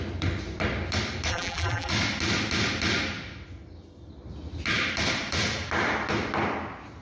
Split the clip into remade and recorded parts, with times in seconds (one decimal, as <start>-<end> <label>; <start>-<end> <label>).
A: 0.0-1.3 recorded; 1.3-1.9 remade; 1.9-7.0 recorded